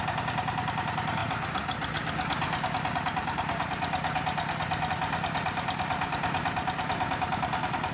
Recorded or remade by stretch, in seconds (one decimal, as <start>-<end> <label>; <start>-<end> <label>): 0.0-7.9 recorded